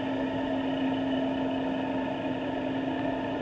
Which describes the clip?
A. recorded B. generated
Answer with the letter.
A